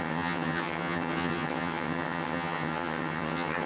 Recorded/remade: remade